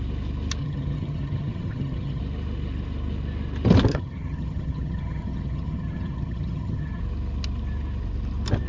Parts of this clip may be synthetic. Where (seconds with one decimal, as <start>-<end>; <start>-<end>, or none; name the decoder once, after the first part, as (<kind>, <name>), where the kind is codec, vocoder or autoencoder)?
0.6-2.2 (vocoder, HiFi-GAN); 3.9-7.0